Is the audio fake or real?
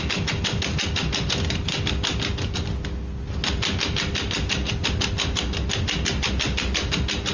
real